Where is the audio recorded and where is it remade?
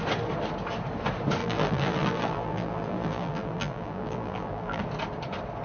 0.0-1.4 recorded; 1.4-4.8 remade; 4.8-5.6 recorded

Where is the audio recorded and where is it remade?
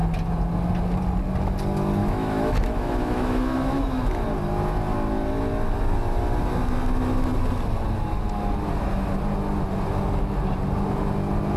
0.0-2.0 recorded; 2.0-3.8 remade; 3.8-11.6 recorded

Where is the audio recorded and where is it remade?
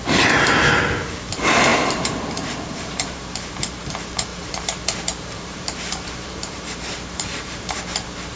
0.0-1.7 recorded; 1.7-3.9 remade; 3.9-4.3 recorded; 4.3-7.8 remade; 7.8-8.4 recorded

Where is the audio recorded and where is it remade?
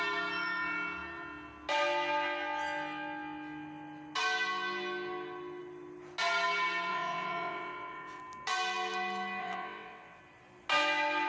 0.0-6.9 recorded; 6.9-8.2 remade; 8.2-9.4 recorded; 9.4-10.2 remade; 10.2-11.3 recorded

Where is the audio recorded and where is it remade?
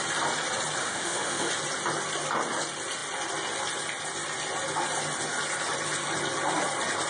0.0-0.8 recorded; 0.8-1.5 remade; 1.5-7.1 recorded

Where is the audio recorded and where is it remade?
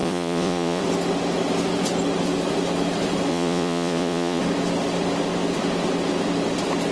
0.0-0.8 remade; 0.8-3.3 recorded; 3.3-4.4 remade; 4.4-6.9 recorded